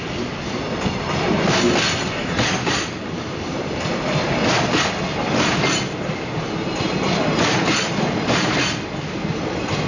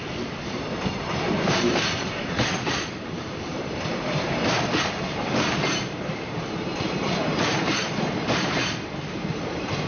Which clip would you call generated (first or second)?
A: second